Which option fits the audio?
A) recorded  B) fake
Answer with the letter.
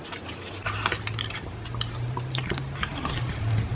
B